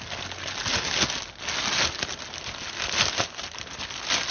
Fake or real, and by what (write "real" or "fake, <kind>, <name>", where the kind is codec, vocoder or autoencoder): real